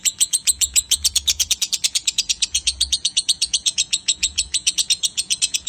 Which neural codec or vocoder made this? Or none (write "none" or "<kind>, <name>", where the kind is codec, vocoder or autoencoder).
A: vocoder, Vocos